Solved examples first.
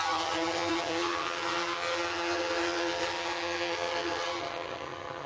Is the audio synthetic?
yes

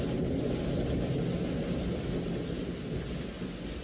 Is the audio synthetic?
no